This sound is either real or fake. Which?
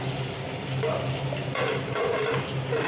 real